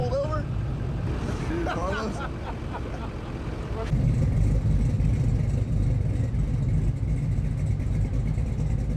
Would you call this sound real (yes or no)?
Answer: yes